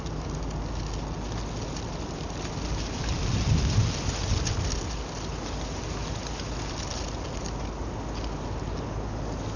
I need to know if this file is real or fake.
real